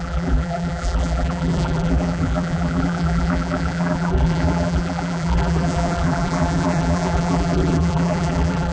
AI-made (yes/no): yes